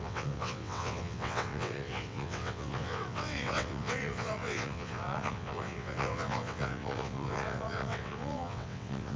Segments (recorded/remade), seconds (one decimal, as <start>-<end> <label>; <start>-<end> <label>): 0.0-9.2 remade